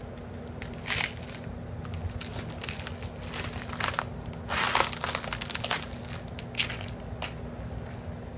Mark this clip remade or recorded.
recorded